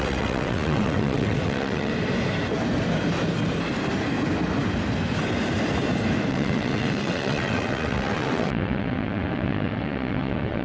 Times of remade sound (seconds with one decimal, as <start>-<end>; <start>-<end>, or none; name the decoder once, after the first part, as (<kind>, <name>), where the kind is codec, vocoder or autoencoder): 0.0-1.9 (vocoder, WaveNeXt); 6.3-10.6